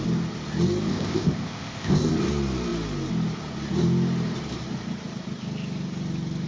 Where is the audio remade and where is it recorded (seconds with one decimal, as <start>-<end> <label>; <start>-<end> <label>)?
0.0-0.9 recorded; 0.9-2.1 remade; 2.1-6.5 recorded

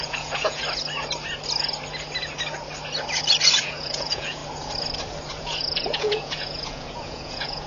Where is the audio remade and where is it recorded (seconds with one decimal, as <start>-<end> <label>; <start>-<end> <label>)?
0.0-0.6 remade; 0.6-3.6 recorded; 3.6-4.4 remade; 4.4-5.4 recorded; 5.4-7.7 remade

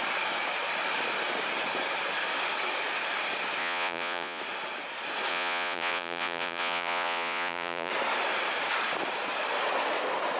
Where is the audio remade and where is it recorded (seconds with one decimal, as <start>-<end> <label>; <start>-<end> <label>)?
0.0-3.6 recorded; 3.6-4.4 remade; 4.4-5.3 recorded; 5.3-7.9 remade; 7.9-10.4 recorded

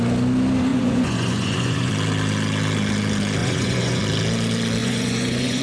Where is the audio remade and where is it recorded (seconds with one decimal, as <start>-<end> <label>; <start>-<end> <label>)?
0.0-0.7 recorded; 0.7-1.9 remade; 1.9-3.4 recorded; 3.4-4.0 remade; 4.0-4.8 recorded; 4.8-5.6 remade

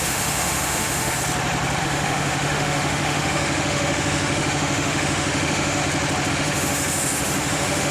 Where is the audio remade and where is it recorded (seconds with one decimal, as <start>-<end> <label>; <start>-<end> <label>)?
0.0-1.2 remade; 1.2-1.8 recorded; 1.8-5.8 remade; 5.8-6.3 recorded; 6.3-7.9 remade

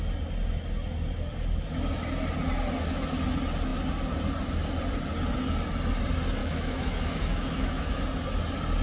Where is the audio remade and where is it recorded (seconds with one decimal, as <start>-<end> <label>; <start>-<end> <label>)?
0.0-6.4 recorded; 6.4-8.0 remade; 8.0-8.8 recorded

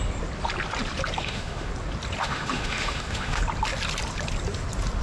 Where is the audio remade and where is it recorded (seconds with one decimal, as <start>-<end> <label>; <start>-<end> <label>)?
0.0-1.2 recorded; 1.2-1.7 remade; 1.7-2.2 recorded; 2.2-3.4 remade; 3.4-5.0 recorded